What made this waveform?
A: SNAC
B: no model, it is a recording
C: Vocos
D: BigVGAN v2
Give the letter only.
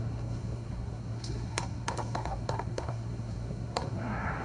A